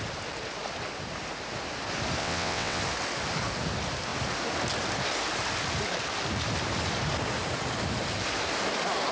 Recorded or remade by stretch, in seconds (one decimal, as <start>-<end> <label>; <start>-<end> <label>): 0.0-2.2 recorded; 2.2-2.8 remade; 2.8-9.1 recorded